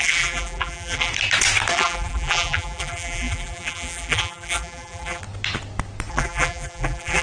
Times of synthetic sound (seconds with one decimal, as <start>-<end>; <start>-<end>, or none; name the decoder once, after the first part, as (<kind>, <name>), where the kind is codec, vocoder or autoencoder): 0.0-1.1 (vocoder, BigVGAN v2); 1.7-5.2; 6.1-7.2